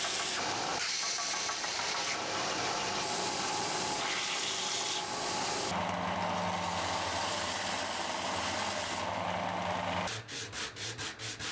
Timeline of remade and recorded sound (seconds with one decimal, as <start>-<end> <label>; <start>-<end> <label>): 0.0-0.7 recorded; 0.7-2.1 remade; 2.1-11.5 recorded